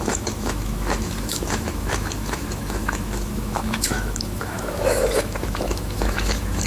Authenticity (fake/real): fake